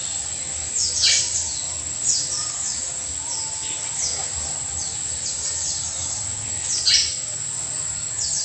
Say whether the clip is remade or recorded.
recorded